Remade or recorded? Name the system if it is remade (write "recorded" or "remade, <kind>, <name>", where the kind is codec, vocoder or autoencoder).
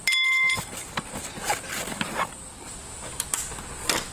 recorded